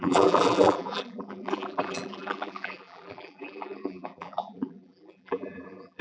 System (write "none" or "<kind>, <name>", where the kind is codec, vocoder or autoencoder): vocoder, BigVGAN v2